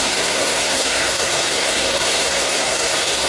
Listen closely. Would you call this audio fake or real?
fake